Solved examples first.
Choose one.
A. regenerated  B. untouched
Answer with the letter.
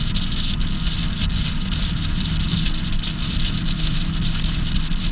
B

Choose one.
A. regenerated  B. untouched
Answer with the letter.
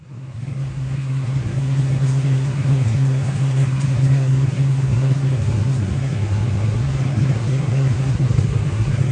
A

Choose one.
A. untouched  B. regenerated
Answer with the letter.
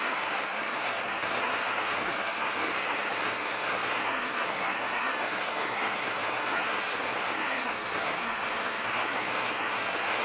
B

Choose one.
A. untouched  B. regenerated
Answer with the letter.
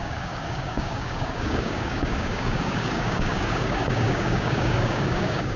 B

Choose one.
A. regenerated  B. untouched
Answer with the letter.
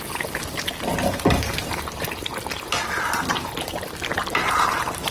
A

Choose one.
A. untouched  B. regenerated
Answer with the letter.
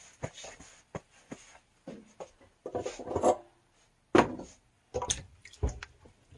A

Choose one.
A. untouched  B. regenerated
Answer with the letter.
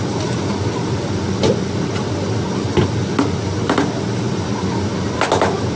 A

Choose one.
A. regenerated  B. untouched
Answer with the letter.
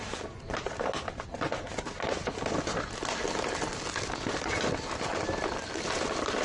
B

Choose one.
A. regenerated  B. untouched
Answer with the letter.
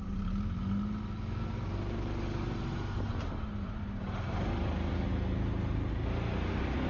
B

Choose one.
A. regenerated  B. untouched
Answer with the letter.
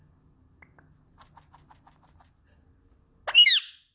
B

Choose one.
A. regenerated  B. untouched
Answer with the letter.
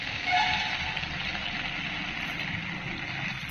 B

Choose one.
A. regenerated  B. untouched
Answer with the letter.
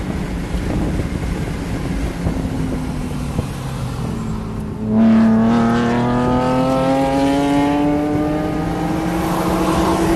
B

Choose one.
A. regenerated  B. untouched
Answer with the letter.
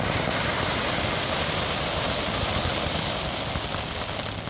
B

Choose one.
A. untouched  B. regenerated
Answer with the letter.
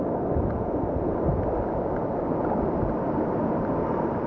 A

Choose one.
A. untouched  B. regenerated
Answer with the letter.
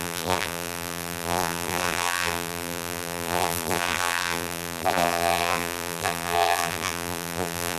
B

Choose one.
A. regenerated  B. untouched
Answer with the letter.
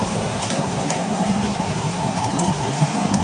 A